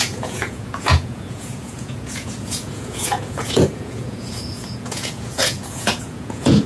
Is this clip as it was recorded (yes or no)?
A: no